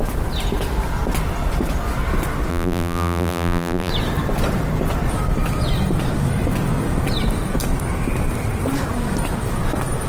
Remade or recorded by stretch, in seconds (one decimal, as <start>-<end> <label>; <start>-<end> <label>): 0.0-2.5 recorded; 2.5-3.9 remade; 3.9-10.1 recorded